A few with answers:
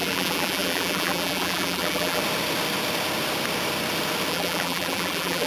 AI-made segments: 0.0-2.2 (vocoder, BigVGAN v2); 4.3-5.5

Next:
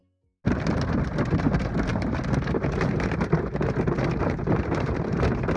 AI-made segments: 1.4-5.6 (vocoder, BigVGAN v2)